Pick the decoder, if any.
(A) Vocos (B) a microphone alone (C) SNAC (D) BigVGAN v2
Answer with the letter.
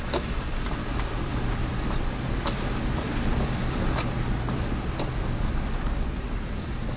D